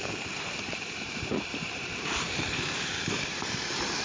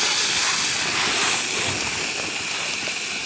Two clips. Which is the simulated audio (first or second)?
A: first